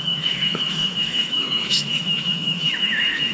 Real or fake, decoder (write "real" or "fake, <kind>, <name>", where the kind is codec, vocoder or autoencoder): fake, autoencoder, DAC-VAE